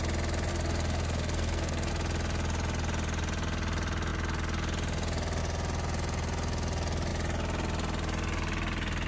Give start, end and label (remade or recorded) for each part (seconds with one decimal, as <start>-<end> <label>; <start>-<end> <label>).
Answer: 0.0-0.5 recorded; 0.5-1.9 remade; 1.9-9.1 recorded